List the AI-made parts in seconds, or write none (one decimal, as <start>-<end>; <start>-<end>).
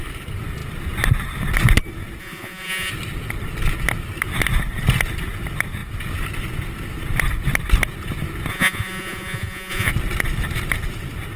2.2-2.9; 8.5-9.9